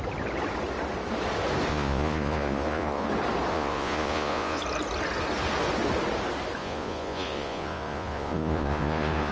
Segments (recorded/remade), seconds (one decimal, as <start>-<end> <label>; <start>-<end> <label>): 0.0-1.7 recorded; 1.7-3.1 remade; 3.1-3.5 recorded; 3.5-4.6 remade; 4.6-6.6 recorded; 6.6-9.3 remade